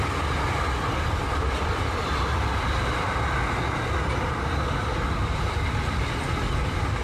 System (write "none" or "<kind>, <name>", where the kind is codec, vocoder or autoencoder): none